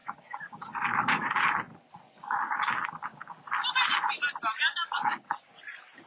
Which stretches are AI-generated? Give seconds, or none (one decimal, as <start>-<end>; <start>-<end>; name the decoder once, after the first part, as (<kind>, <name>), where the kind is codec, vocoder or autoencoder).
0.0-1.4 (codec, DAC); 2.2-2.8; 4.7-5.5